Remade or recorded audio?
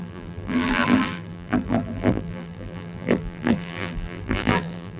remade